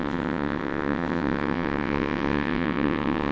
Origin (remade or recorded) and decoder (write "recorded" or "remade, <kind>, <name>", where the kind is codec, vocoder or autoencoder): remade, vocoder, WaveNeXt